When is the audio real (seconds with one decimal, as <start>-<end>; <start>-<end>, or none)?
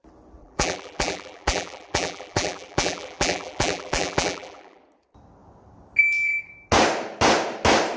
0.0-0.4; 4.8-8.0